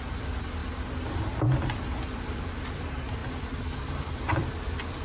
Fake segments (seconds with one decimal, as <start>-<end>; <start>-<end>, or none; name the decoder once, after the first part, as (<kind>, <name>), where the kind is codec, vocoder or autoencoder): 0.0-0.6 (vocoder, BigVGAN v2); 2.5-3.2; 3.8-5.0